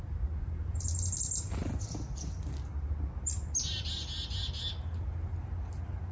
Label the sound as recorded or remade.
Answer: recorded